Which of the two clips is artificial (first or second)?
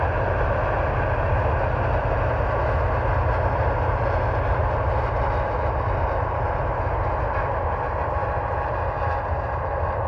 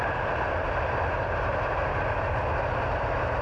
second